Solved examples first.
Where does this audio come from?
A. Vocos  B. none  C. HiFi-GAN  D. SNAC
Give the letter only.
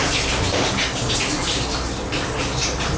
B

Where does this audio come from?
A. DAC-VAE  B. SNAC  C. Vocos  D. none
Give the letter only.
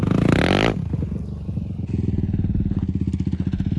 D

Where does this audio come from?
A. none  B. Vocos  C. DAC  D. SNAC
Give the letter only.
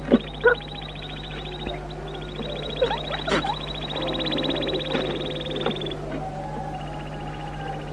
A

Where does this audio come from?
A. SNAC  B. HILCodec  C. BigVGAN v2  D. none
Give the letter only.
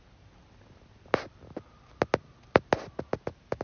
D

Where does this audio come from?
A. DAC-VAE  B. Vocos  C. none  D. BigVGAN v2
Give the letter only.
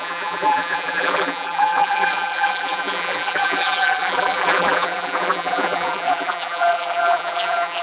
D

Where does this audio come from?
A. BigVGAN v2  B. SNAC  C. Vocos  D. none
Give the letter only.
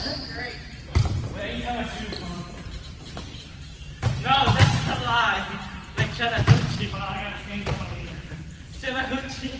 A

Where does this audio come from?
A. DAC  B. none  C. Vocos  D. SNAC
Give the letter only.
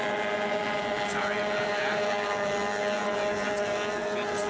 B